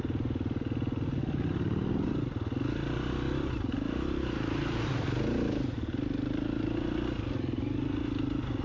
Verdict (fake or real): real